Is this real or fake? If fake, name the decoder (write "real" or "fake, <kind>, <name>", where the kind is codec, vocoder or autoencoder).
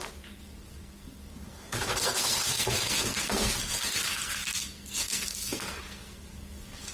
fake, codec, SNAC